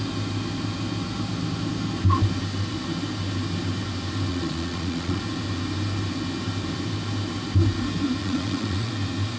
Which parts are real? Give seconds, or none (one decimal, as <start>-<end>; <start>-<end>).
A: 0.0-4.3; 5.2-8.2; 8.9-9.4

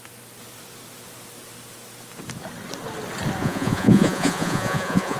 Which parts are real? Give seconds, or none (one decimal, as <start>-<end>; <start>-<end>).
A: 0.0-3.4